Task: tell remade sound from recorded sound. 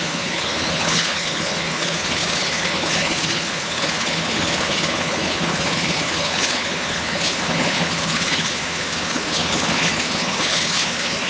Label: remade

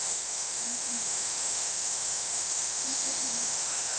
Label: remade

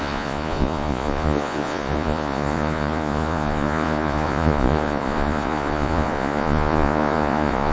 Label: remade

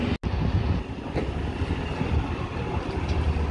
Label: recorded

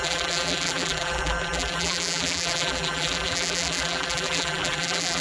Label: remade